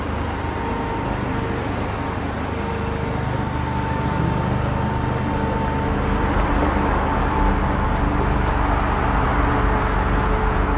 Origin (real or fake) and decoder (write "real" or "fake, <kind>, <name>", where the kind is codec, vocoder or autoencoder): real